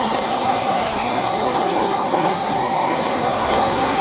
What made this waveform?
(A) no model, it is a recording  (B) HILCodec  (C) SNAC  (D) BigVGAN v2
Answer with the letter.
C